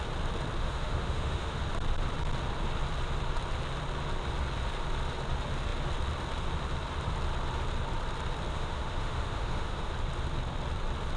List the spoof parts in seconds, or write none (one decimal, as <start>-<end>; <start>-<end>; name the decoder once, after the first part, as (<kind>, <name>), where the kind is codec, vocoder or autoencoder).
0.6-1.6 (autoencoder, DAC-VAE); 8.5-9.9